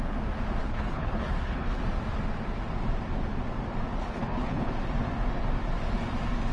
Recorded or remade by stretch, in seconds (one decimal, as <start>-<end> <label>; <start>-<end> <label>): 0.0-0.6 recorded; 0.6-1.8 remade; 1.8-4.0 recorded; 4.0-4.7 remade; 4.7-6.5 recorded